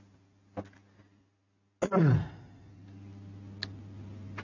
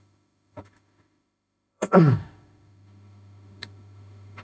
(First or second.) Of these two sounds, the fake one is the second